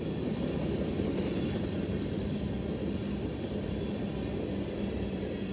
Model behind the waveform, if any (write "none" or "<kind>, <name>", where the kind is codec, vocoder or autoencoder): none